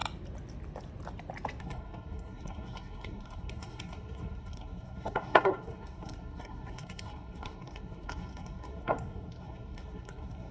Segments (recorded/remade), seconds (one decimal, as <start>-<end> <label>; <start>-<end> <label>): 0.0-1.6 recorded; 1.6-10.5 remade

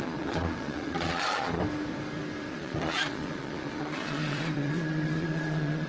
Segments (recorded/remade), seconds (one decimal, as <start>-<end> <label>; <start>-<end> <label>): 0.0-1.6 remade; 1.6-2.5 recorded; 2.5-5.9 remade

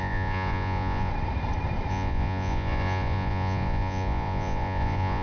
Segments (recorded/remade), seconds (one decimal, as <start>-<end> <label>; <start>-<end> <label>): 0.0-1.1 remade; 1.1-1.9 recorded; 1.9-5.2 remade

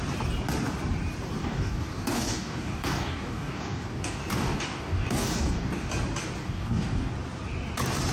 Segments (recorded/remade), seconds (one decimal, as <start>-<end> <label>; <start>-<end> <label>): 0.0-1.4 recorded; 1.4-5.9 remade; 5.9-6.4 recorded; 6.4-7.1 remade; 7.1-8.1 recorded